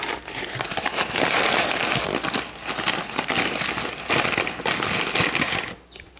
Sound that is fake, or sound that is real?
real